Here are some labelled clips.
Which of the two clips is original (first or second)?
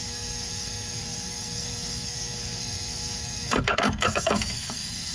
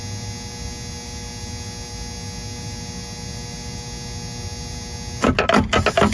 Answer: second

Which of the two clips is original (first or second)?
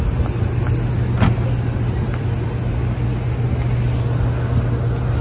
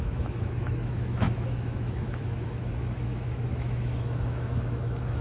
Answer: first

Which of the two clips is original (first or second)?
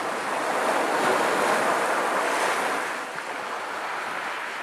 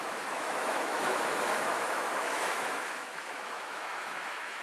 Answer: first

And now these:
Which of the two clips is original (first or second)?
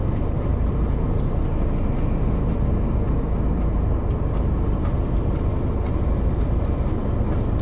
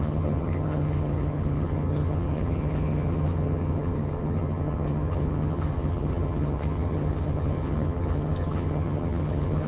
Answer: first